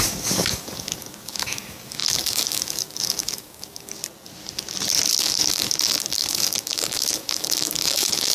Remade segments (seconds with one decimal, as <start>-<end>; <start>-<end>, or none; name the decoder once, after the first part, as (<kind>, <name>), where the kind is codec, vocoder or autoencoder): 0.0-4.0 (codec, DAC); 5.2-8.3